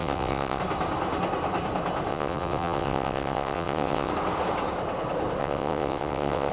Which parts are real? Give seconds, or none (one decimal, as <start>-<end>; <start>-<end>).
0.6-2.1; 4.1-5.4